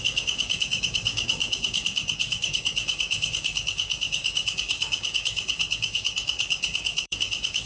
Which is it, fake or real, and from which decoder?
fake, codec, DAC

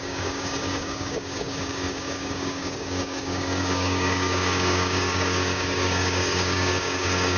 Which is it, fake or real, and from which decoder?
fake, codec, DAC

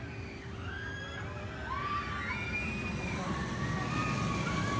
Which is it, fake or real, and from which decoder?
real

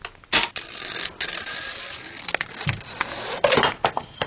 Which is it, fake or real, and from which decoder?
real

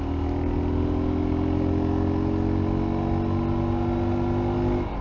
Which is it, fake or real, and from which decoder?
real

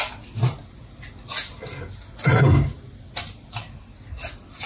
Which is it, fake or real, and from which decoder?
real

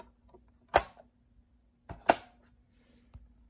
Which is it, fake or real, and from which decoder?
real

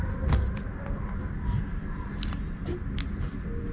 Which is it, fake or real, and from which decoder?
real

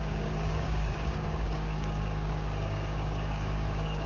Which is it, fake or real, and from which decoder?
fake, codec, DAC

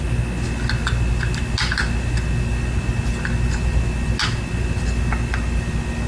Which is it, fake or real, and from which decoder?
real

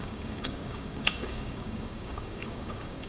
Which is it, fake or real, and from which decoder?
fake, codec, DAC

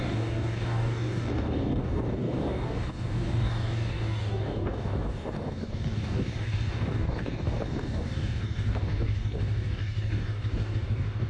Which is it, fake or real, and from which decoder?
fake, codec, DAC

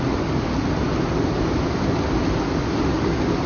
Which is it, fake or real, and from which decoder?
real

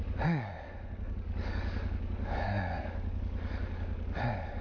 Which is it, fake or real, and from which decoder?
fake, codec, DAC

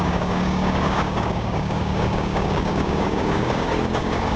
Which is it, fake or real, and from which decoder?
fake, codec, DAC